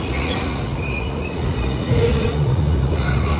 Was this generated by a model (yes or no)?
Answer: yes